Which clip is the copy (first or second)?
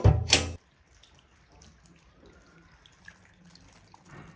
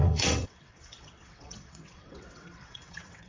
second